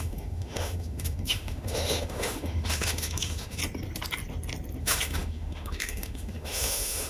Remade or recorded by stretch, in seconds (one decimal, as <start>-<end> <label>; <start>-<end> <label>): 0.0-3.6 remade; 3.6-4.8 recorded; 4.8-7.1 remade